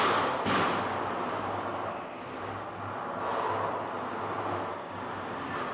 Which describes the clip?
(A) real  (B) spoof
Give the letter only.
A